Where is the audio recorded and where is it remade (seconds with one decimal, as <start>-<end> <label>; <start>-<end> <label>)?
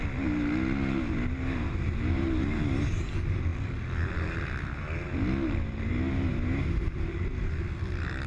0.0-8.3 recorded